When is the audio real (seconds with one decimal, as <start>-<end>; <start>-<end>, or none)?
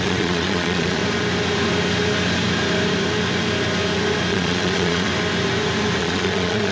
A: 1.0-4.3; 5.1-6.0